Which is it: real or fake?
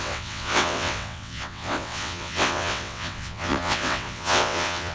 fake